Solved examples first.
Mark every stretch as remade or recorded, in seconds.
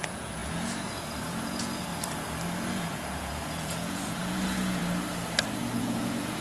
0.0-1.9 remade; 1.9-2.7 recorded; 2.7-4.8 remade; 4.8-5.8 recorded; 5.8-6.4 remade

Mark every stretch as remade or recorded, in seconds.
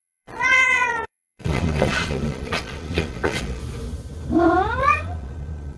0.0-3.6 remade; 3.6-4.8 recorded; 4.8-5.8 remade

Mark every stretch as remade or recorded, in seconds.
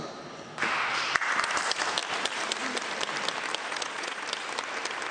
0.0-3.6 recorded; 3.6-4.2 remade; 4.2-5.1 recorded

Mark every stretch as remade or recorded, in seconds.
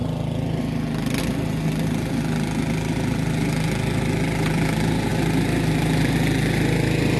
0.0-7.2 recorded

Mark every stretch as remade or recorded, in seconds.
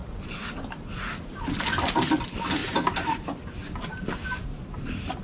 0.0-5.2 recorded